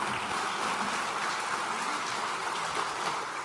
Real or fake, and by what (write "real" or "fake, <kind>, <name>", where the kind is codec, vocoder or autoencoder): real